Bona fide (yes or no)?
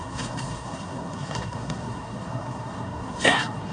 no